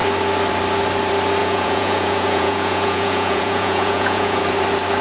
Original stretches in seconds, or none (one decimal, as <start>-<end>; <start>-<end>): 0.0-1.4; 4.4-5.0